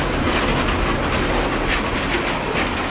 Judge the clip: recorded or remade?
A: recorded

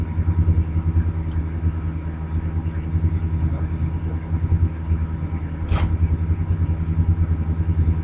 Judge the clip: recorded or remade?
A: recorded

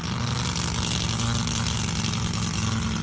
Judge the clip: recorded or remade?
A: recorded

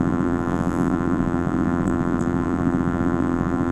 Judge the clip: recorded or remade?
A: remade